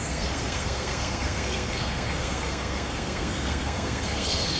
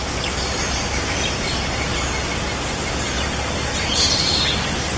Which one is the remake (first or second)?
first